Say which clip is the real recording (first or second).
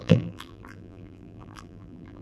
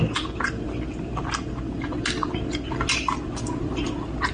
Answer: second